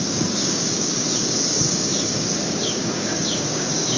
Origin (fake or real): fake